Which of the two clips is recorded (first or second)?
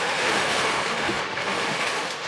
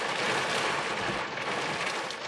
second